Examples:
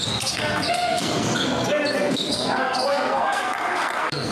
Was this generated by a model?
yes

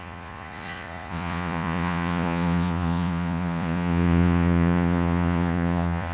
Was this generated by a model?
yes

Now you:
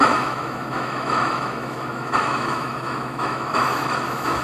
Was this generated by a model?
yes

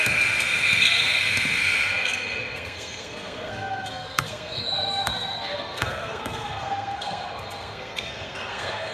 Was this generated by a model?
yes